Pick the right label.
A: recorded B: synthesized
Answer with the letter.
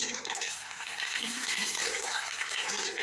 B